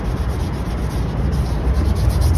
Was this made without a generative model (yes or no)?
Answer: yes